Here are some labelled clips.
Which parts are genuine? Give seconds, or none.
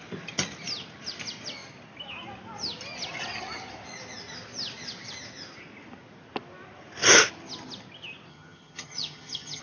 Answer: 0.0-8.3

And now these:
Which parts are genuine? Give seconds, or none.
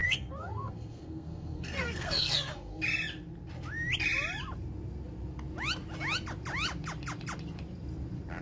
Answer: 2.8-8.4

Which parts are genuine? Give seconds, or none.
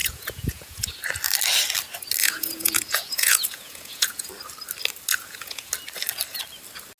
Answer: 0.9-2.2; 4.3-5.1; 5.7-7.0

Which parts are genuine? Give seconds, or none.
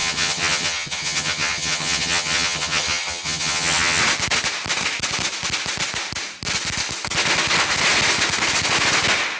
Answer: 4.0-9.4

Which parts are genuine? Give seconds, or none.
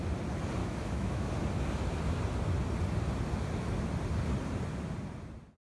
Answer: 0.0-0.6; 1.3-5.6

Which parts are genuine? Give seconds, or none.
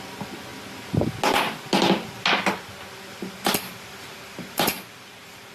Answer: 0.0-3.1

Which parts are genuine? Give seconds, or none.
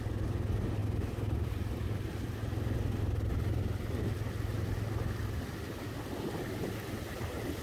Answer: 0.0-0.8; 4.0-7.6